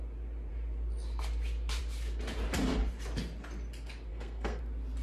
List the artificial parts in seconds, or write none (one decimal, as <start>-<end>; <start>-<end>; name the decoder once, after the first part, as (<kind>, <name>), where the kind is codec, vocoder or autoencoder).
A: 4.1-4.6 (codec, SNAC)